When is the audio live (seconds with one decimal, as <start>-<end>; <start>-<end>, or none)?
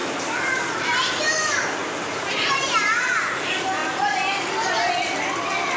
0.0-5.8